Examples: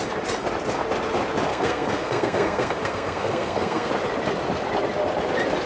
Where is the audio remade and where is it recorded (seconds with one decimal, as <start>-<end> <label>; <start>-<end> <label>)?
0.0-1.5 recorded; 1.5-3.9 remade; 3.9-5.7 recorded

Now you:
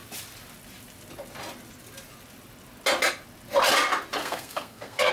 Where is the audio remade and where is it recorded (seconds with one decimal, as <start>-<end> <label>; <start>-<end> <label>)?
0.0-4.2 recorded; 4.2-5.1 remade

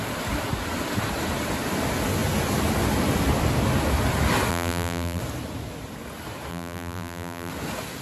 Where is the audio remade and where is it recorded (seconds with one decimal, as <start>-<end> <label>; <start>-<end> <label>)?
0.0-4.5 recorded; 4.5-5.2 remade; 5.2-6.5 recorded; 6.5-7.5 remade; 7.5-8.0 recorded